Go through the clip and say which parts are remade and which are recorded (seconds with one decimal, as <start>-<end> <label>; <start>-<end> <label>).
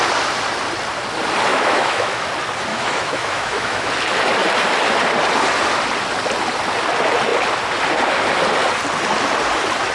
0.0-1.5 recorded; 1.5-2.3 remade; 2.3-2.7 recorded; 2.7-3.9 remade; 3.9-9.9 recorded